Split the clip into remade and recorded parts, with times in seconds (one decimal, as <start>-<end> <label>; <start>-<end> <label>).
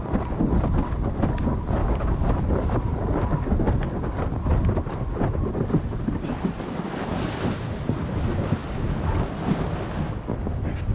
0.0-1.8 recorded; 1.8-2.4 remade; 2.4-10.9 recorded